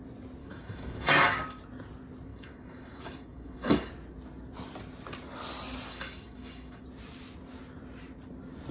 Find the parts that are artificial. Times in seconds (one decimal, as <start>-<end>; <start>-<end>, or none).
0.4-1.6; 2.3-3.9; 5.9-6.8